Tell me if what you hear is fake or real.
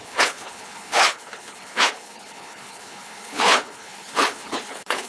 fake